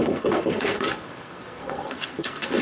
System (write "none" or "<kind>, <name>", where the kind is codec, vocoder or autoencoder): codec, SNAC